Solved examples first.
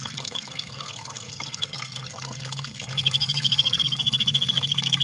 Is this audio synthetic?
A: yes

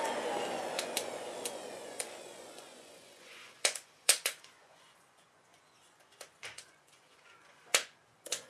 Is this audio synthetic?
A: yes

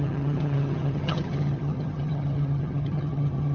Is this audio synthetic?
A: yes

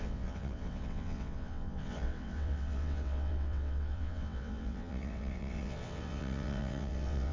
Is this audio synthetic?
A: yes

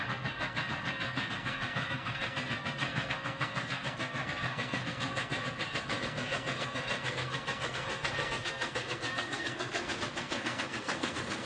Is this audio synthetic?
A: yes